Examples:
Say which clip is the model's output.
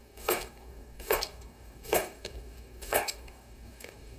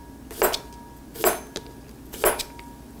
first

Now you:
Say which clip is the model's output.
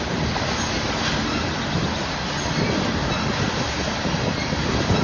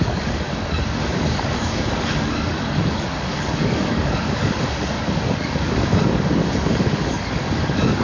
second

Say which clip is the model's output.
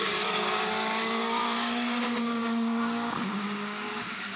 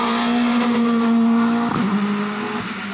first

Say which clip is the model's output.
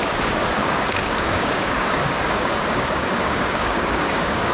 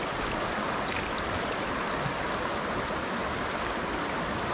first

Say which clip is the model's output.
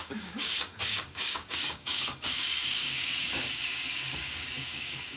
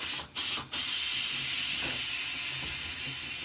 first